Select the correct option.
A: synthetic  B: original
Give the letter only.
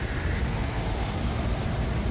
B